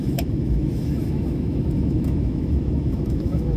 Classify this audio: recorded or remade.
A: remade